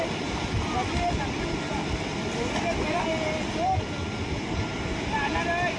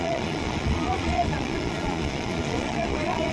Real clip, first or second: first